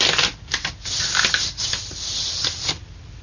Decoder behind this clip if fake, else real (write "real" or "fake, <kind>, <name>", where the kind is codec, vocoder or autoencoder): real